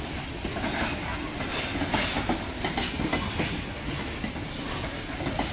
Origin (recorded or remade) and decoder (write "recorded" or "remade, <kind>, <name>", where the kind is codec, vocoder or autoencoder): recorded